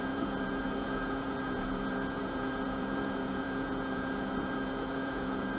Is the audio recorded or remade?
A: remade